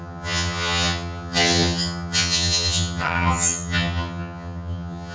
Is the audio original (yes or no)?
no